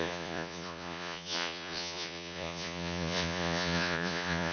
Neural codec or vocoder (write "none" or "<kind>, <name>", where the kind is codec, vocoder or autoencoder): vocoder, Vocos